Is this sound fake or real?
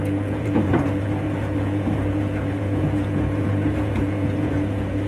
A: fake